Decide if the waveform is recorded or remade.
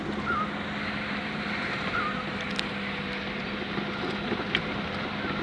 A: recorded